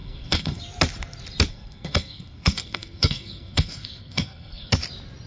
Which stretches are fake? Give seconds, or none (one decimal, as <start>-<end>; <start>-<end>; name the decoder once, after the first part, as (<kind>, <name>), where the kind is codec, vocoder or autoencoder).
0.0-0.6 (codec, SNAC); 1.5-4.7